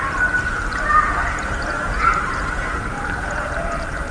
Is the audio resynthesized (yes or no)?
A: yes